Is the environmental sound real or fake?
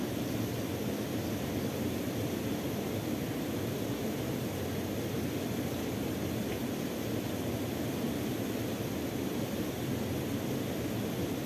real